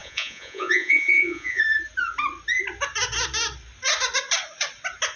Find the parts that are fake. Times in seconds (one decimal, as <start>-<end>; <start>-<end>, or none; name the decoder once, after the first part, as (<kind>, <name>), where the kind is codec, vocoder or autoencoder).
0.0-1.6 (vocoder, Vocos)